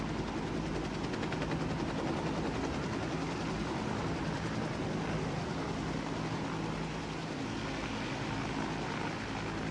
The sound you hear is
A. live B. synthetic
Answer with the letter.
A